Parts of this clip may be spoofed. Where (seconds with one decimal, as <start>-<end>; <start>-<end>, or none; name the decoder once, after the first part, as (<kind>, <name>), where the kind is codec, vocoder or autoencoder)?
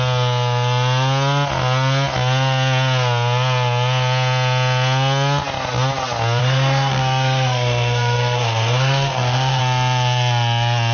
6.4-9.6 (codec, SNAC)